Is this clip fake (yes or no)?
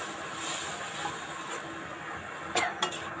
no